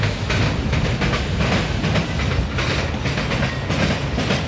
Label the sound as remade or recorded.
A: recorded